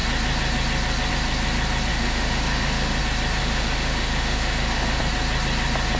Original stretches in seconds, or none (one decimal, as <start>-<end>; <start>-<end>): 0.0-1.9; 3.0-3.4; 5.0-6.0